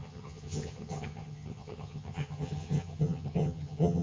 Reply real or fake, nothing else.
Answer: fake